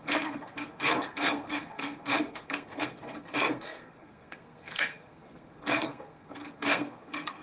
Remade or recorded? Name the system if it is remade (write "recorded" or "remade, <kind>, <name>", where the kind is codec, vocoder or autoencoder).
remade, codec, SNAC